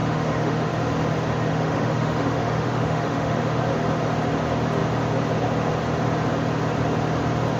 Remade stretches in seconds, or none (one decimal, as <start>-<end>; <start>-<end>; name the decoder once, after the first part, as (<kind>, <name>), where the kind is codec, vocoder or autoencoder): 0.0-0.7 (autoencoder, DAC-VAE); 1.5-3.6